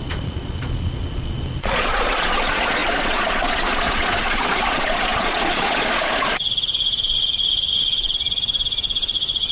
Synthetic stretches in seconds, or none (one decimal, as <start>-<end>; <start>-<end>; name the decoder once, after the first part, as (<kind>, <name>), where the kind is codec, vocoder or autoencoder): 0.0-9.5 (vocoder, Vocos)